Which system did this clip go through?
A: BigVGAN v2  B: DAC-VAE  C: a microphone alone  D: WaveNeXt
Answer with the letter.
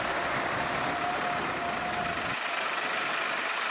C